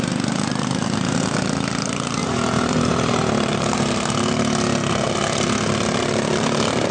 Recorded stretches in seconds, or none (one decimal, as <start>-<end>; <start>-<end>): 0.0-6.9